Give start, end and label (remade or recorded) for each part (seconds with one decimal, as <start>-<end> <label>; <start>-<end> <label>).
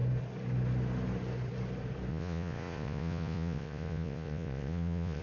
0.0-2.1 recorded; 2.1-5.2 remade